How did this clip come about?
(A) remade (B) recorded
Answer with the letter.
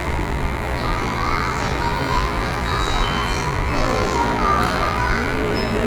A